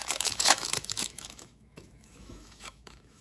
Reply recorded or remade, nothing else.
remade